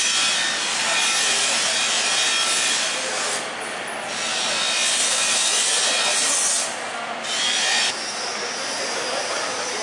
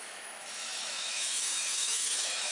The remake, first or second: second